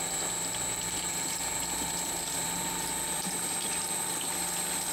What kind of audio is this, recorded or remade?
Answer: remade